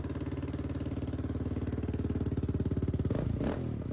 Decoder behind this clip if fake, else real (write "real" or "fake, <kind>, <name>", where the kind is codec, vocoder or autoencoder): real